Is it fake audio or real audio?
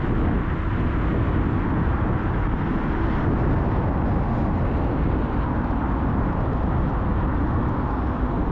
real